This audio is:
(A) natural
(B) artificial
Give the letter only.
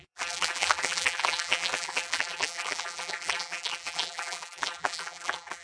B